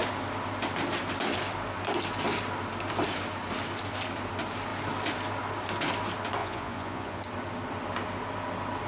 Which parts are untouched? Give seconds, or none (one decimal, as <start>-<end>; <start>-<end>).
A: 0.0-6.4; 7.2-8.9